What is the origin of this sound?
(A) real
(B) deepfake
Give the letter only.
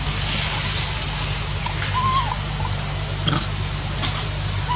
A